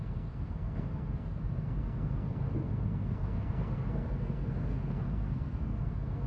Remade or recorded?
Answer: remade